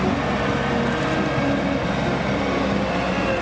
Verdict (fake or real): real